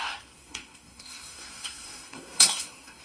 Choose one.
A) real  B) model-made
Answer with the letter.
B